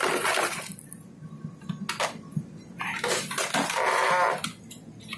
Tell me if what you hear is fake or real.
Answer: real